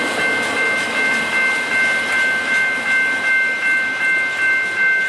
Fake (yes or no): no